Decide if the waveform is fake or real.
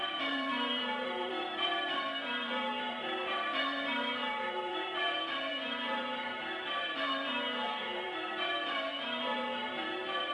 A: fake